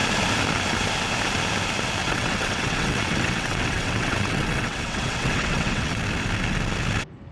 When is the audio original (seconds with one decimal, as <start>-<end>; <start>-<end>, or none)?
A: 0.0-2.0; 6.0-7.3